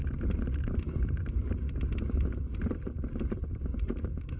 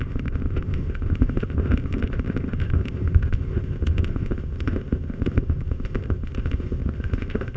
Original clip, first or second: first